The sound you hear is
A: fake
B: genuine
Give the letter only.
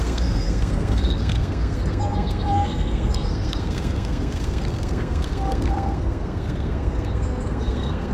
A